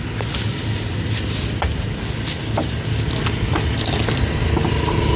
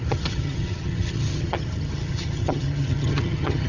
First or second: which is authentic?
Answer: first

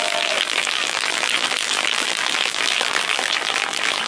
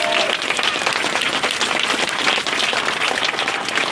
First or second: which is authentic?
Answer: second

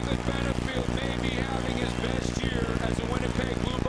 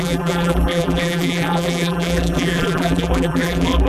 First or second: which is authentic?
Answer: first